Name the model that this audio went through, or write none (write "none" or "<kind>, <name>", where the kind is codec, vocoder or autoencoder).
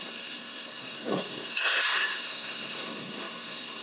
codec, SNAC